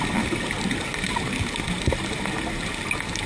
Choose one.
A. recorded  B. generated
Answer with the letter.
A